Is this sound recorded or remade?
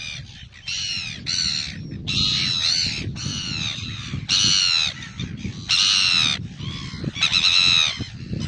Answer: recorded